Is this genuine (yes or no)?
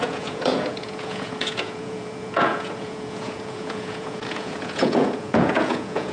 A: no